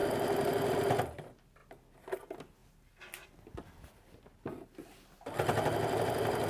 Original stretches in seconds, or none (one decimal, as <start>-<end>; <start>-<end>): 0.0-6.5